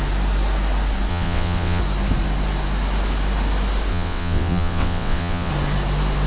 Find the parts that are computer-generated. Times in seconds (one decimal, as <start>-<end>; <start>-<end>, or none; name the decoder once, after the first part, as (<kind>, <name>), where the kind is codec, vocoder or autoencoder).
1.1-1.8 (vocoder, WaveNeXt); 3.9-5.5